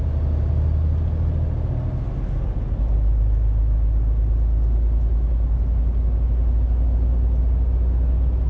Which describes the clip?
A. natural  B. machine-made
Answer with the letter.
A